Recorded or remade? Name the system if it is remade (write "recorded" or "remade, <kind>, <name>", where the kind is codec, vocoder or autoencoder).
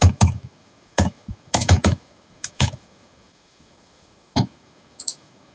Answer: remade, autoencoder, DAC-VAE